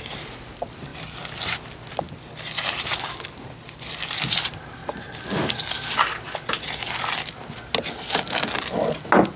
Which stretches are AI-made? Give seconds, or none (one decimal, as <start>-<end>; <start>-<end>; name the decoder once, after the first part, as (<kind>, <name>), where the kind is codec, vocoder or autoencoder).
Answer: none